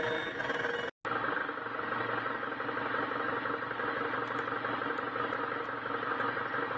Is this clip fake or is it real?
real